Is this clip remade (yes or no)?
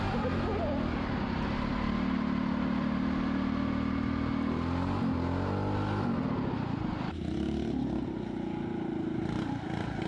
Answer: no